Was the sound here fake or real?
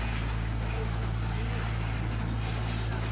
real